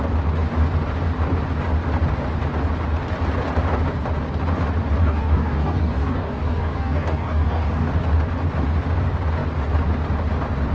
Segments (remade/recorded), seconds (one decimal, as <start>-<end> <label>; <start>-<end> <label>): 0.0-5.0 recorded; 5.0-7.9 remade; 7.9-10.7 recorded